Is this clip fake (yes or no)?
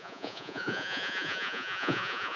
yes